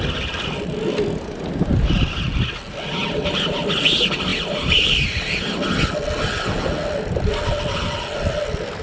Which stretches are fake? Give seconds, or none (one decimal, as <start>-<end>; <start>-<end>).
3.0-3.6; 4.3-5.2